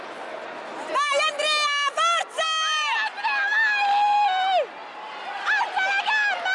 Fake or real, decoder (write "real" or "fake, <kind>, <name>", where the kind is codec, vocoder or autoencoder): real